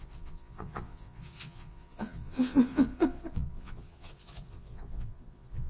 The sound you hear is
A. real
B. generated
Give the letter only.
B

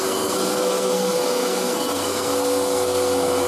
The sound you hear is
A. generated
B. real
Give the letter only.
A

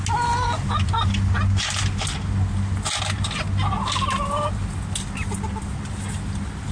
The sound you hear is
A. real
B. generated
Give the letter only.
A